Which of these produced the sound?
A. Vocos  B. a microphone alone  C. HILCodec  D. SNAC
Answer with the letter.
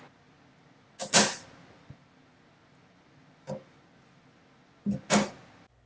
B